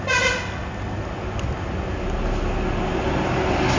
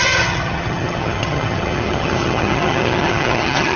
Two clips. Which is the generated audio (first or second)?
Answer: second